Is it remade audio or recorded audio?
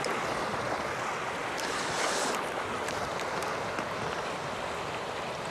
recorded